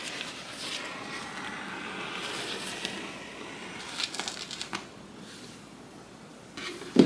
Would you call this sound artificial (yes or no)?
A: no